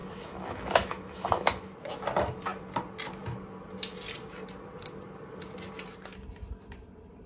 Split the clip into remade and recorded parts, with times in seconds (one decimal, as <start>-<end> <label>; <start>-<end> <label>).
0.0-1.7 remade; 1.7-7.3 recorded